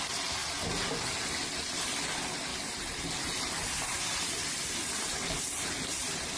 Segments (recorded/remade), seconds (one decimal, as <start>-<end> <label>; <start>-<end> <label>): 0.0-6.4 recorded